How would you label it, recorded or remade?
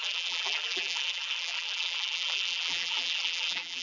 remade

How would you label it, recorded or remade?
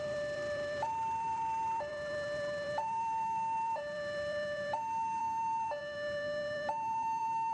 remade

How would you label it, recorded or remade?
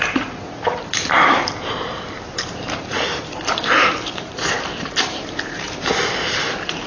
remade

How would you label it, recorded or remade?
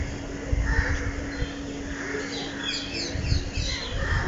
recorded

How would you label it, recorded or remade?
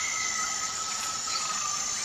remade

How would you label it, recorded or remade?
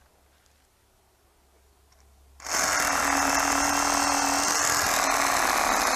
recorded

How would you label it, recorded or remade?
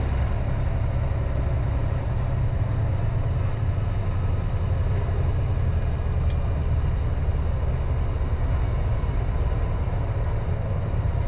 recorded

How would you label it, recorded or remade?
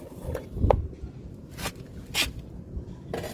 recorded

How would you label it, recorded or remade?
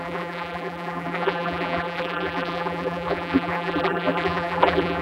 remade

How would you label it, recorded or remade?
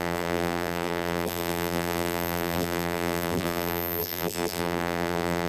remade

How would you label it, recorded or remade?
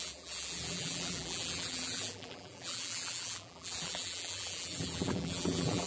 remade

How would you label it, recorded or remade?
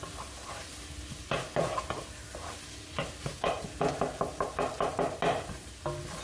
recorded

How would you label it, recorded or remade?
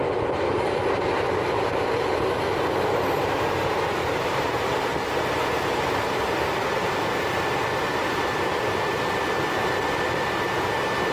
remade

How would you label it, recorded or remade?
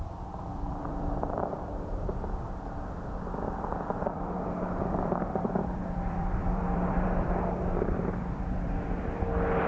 remade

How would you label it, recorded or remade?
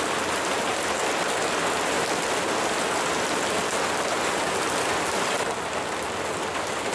recorded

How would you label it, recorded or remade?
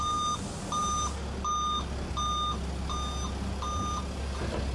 recorded